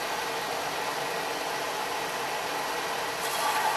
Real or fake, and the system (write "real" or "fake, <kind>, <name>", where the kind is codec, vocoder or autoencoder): real